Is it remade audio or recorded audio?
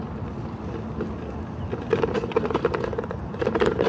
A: recorded